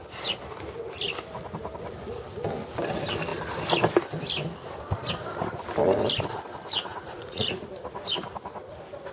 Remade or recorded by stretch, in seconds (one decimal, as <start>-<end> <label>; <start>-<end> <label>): 0.0-6.9 recorded; 6.9-7.7 remade; 7.7-9.1 recorded